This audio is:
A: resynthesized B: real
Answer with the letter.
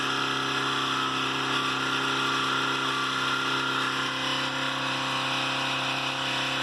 B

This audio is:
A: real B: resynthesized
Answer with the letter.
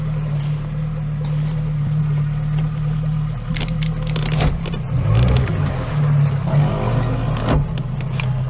A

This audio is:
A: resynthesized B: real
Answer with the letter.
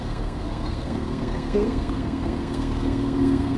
A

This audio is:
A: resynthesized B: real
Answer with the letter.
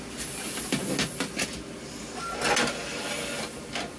B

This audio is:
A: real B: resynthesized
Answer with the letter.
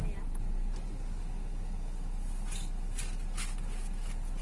A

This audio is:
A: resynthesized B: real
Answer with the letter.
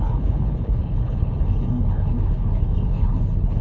A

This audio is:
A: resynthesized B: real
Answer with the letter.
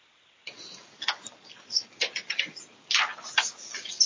B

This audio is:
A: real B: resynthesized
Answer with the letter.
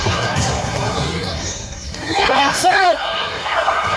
B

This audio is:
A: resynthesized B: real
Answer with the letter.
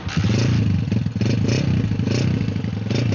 B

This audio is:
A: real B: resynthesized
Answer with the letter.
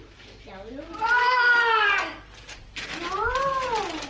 A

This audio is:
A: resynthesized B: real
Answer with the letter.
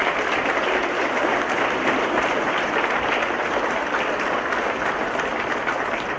B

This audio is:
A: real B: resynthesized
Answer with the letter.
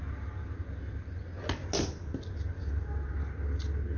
A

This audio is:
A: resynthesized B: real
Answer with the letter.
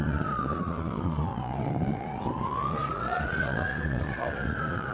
A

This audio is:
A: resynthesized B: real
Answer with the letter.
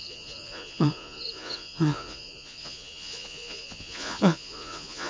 A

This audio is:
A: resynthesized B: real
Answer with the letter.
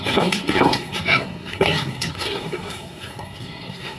A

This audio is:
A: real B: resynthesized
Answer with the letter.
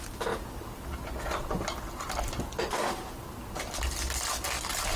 A